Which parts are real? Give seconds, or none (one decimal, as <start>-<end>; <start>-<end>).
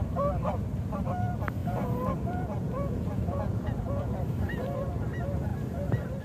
0.0-1.6; 4.1-6.2